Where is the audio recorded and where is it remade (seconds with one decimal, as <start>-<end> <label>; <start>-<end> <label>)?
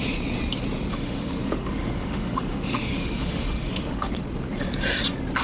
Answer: 0.0-0.9 recorded; 0.9-4.1 remade; 4.1-5.4 recorded